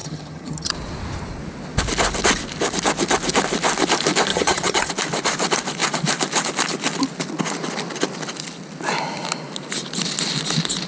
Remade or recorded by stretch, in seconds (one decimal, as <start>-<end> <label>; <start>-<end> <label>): 0.0-0.7 remade; 0.7-4.3 recorded; 4.3-4.9 remade; 4.9-10.9 recorded